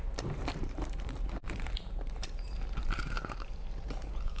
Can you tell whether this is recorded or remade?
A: remade